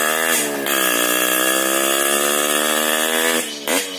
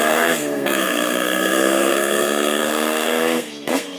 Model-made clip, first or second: second